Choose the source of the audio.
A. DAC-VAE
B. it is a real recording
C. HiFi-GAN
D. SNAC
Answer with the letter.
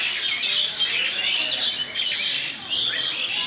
B